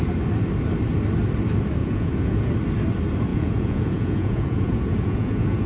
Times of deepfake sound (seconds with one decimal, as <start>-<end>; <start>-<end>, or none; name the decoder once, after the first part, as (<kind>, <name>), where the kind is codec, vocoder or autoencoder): 1.8-2.5 (vocoder, Vocos); 3.3-5.7